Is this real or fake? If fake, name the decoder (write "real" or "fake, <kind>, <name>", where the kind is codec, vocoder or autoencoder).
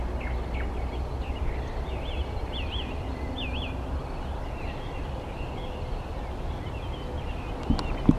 real